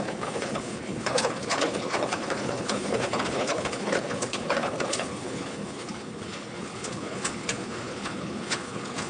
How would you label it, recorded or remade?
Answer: remade